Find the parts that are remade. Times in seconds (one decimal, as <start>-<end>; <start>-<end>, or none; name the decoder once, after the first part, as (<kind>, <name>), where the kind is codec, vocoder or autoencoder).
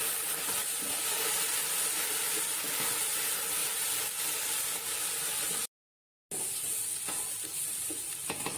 none